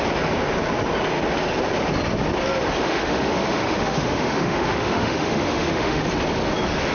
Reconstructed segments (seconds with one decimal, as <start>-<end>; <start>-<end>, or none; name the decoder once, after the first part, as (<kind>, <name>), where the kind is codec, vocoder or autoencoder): 2.8-6.0 (autoencoder, DAC-VAE)

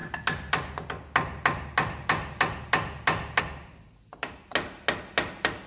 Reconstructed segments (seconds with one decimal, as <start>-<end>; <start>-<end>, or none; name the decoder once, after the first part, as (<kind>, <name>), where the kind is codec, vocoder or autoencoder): none

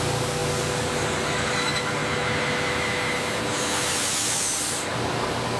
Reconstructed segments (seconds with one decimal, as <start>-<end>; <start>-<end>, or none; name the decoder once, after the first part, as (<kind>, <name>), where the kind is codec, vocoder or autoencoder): 0.0-2.0 (codec, DAC); 4.6-5.6

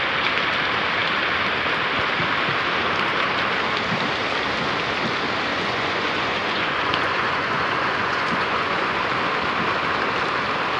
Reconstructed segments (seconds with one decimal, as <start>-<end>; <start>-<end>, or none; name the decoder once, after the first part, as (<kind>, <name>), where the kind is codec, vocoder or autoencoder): 5.5-9.0 (vocoder, Vocos)